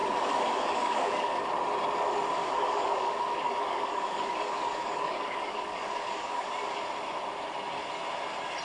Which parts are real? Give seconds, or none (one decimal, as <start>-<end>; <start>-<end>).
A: 1.4-2.4; 6.8-8.6